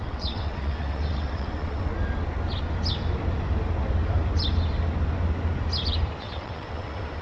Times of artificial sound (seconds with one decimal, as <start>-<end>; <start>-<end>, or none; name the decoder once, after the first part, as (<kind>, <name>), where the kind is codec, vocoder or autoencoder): 0.0-1.9 (vocoder, WaveNeXt); 6.2-7.2